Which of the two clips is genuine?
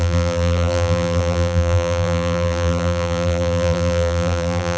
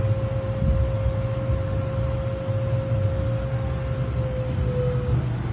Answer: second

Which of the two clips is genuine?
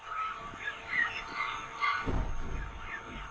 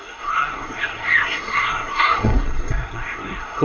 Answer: first